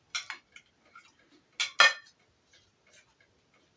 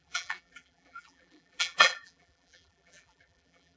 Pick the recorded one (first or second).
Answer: first